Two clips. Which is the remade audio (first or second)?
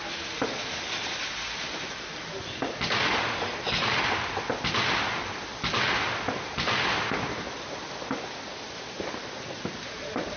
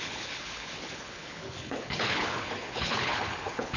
second